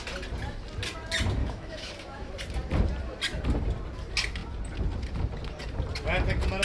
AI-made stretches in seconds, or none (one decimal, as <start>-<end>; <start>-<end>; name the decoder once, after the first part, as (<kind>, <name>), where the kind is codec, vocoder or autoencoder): 1.4-2.3 (autoencoder, DAC-VAE)